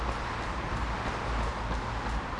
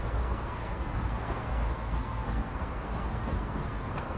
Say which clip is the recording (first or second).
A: first